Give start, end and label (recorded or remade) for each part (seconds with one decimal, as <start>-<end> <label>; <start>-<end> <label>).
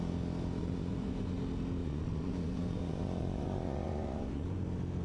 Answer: 0.0-0.6 recorded; 0.6-1.4 remade; 1.4-1.8 recorded; 1.8-4.6 remade; 4.6-5.0 recorded